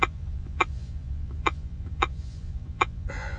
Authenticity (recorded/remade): remade